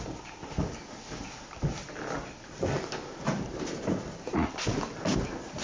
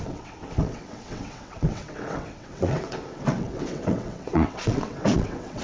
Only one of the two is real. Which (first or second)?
first